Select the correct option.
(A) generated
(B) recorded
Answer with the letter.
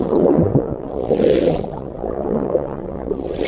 A